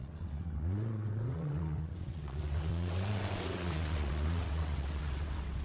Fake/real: fake